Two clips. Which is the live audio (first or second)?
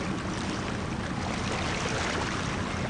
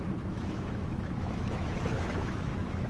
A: first